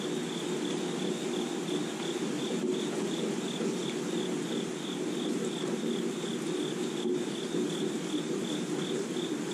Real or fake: real